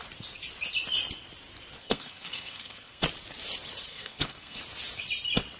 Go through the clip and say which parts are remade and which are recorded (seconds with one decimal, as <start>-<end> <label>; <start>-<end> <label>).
0.0-1.8 recorded; 1.8-3.0 remade; 3.0-3.9 recorded; 3.9-4.6 remade; 4.6-5.6 recorded